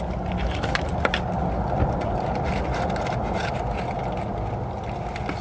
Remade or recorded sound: recorded